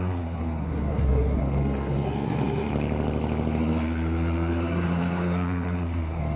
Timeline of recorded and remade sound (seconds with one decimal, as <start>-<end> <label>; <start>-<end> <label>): 0.0-2.7 remade; 2.7-3.6 recorded; 3.6-6.4 remade